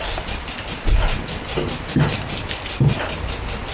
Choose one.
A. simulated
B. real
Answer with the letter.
B